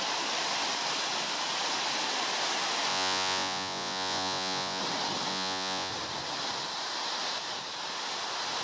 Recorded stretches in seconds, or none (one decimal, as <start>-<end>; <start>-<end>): 0.0-2.9; 4.8-5.3; 5.9-8.6